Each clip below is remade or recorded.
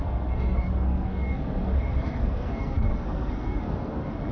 remade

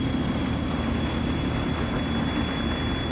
recorded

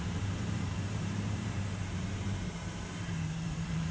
remade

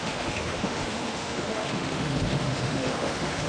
remade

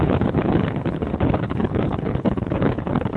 remade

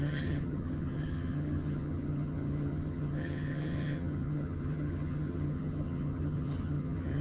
remade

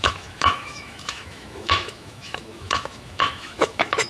remade